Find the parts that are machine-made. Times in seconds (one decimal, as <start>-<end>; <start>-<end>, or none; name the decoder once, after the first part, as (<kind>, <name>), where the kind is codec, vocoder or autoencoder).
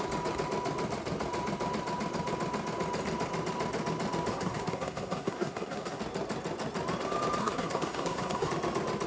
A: 4.3-6.0 (codec, SNAC); 7.4-8.5